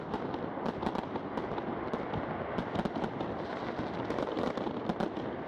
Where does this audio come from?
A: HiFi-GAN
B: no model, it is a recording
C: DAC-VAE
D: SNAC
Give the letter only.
B